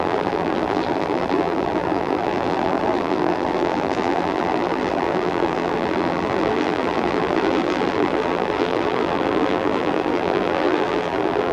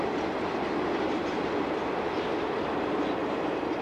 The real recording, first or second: second